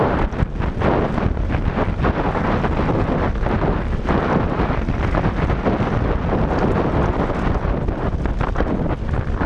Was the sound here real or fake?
real